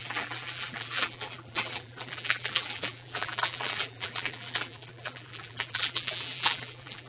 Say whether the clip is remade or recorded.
remade